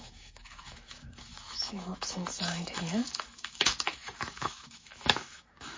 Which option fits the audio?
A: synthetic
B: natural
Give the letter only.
A